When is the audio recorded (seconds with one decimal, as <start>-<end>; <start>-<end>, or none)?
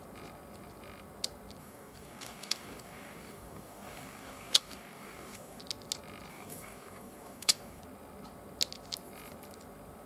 0.0-1.6; 5.6-6.3; 7.8-10.1